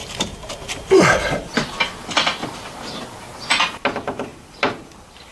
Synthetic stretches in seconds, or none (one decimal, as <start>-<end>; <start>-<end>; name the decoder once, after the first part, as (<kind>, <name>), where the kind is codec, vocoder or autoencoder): 0.0-1.0 (vocoder, BigVGAN v2)